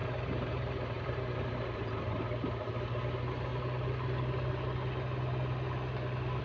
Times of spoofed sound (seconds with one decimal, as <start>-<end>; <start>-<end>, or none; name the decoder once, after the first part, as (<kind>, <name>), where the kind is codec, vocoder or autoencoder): 0.0-3.5 (vocoder, BigVGAN v2)